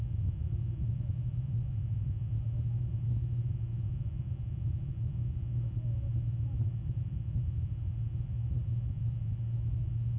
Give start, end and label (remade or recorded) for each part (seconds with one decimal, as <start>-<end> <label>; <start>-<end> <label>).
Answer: 0.0-10.2 recorded